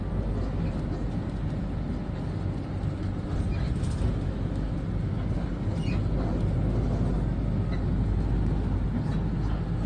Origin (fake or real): real